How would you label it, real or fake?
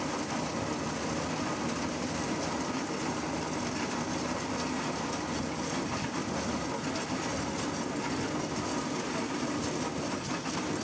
real